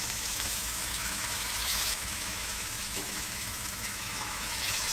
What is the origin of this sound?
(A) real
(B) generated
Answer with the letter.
B